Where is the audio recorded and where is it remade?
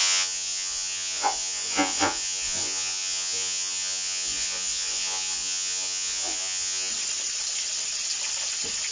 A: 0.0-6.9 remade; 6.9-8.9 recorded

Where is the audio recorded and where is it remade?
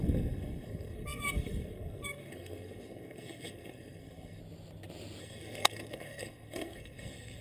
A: 0.0-4.4 remade; 4.4-5.2 recorded; 5.2-7.4 remade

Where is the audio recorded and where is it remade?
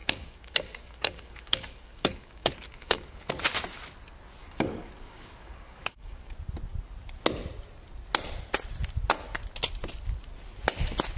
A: 0.0-3.3 remade; 3.3-4.4 recorded; 4.4-6.3 remade; 6.3-11.2 recorded